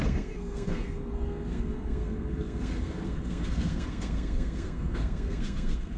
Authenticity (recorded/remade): remade